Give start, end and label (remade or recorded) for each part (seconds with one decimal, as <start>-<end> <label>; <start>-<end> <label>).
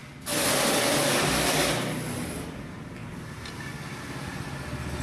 0.0-3.0 recorded; 3.0-3.7 remade; 3.7-5.0 recorded